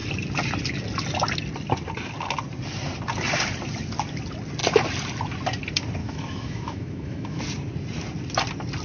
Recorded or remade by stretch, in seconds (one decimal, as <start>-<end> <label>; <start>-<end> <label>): 0.0-6.0 recorded; 6.0-7.4 remade; 7.4-8.8 recorded

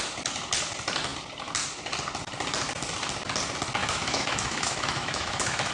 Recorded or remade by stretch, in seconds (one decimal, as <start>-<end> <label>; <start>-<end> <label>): 0.0-3.8 recorded; 3.8-5.7 remade

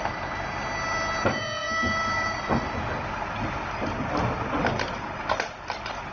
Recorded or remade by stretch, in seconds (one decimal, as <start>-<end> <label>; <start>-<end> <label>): 0.0-6.1 recorded